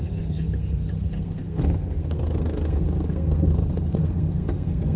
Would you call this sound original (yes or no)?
no